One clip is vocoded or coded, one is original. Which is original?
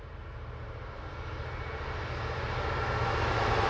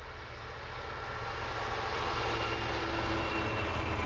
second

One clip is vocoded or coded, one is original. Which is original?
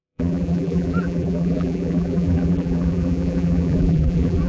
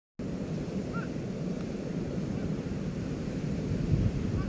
second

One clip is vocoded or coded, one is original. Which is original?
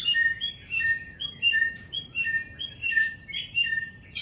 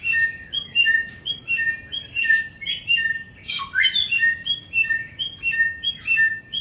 second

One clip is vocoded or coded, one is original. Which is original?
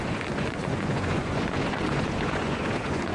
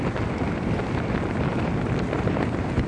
second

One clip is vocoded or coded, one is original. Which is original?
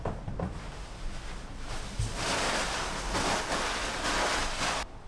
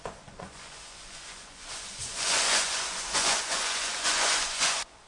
first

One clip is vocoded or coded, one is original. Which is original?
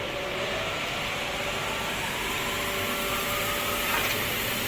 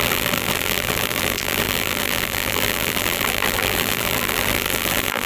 first